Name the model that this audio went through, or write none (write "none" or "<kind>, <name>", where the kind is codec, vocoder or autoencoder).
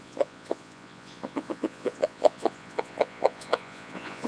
vocoder, Vocos